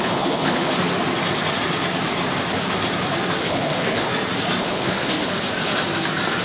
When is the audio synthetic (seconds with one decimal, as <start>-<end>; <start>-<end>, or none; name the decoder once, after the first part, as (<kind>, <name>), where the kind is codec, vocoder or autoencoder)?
0.0-0.7 (codec, HILCodec); 3.4-4.1; 4.6-5.3